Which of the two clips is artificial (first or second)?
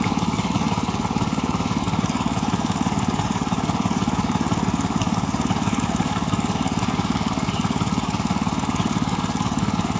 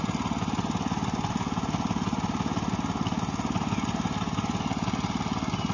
first